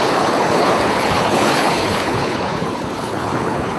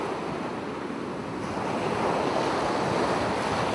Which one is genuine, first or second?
second